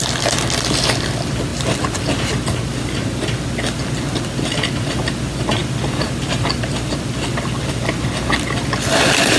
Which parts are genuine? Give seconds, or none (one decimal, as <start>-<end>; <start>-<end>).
0.0-9.4